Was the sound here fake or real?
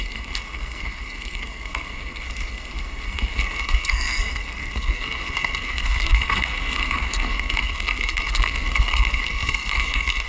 fake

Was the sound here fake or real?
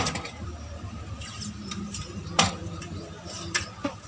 fake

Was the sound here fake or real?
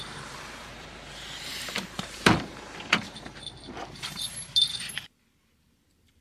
fake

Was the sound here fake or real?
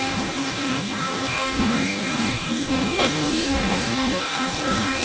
fake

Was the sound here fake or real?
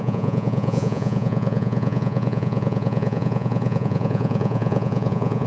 fake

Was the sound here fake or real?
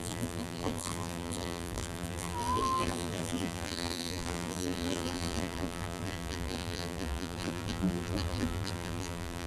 fake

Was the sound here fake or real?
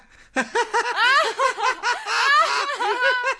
real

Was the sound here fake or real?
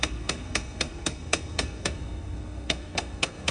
fake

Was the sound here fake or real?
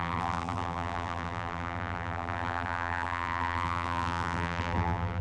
fake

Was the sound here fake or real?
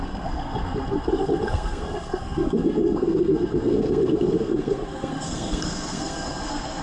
fake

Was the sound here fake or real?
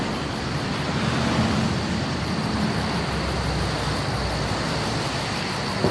real